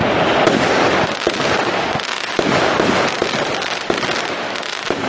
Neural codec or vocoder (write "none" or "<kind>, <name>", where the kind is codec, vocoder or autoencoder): none